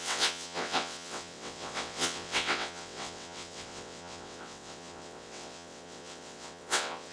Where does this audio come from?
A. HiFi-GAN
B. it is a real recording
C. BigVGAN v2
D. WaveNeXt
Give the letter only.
D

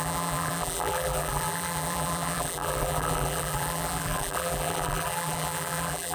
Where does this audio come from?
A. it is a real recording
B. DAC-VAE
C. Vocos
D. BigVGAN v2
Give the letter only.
D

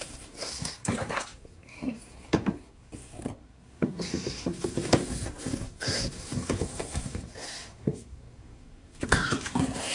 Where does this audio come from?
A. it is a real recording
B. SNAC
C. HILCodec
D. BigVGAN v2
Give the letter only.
B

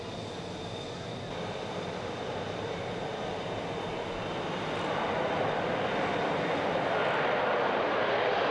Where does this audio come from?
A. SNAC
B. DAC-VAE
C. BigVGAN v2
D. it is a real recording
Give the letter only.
D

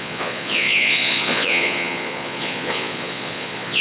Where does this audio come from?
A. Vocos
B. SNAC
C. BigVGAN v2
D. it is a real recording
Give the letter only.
A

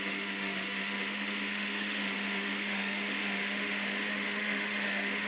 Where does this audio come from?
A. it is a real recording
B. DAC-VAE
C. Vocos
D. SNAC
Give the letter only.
B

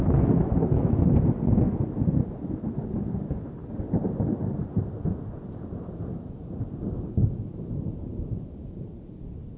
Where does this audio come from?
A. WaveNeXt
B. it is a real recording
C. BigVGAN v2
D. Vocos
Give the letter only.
B